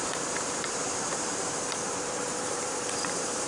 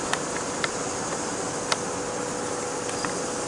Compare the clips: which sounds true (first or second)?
second